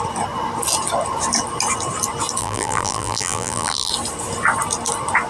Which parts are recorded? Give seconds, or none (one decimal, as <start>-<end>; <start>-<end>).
0.0-2.4; 3.9-5.3